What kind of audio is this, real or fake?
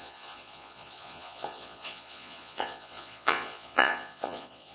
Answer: fake